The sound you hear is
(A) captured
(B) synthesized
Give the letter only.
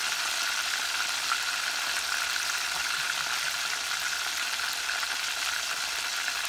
A